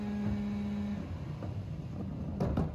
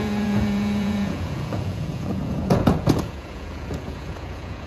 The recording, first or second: first